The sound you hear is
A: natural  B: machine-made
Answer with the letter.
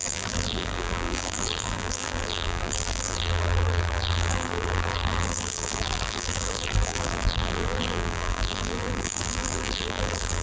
B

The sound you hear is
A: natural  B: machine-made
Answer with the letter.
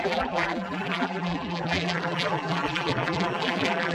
B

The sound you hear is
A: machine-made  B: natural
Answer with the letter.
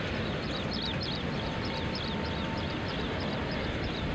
B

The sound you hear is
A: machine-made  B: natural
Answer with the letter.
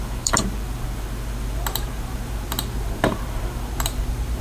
A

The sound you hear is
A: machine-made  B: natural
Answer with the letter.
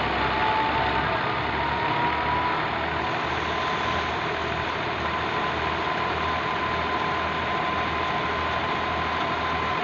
B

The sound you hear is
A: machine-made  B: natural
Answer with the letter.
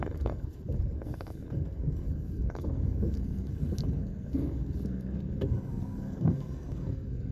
A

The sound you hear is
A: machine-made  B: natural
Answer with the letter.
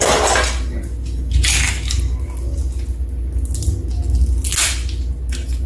B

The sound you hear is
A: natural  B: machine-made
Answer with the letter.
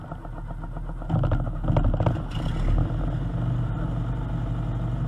A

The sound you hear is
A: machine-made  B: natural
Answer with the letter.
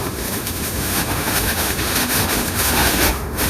A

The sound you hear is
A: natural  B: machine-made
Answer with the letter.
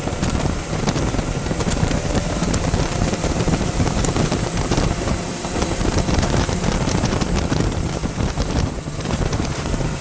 B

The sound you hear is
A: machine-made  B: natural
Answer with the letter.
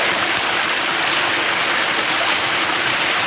B